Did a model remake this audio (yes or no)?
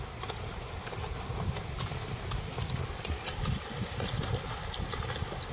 no